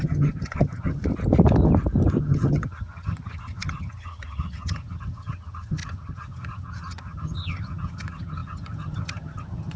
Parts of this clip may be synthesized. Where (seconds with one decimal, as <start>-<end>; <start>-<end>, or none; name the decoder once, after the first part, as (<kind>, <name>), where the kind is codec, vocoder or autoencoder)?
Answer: 0.0-1.0 (vocoder, HiFi-GAN); 2.2-9.8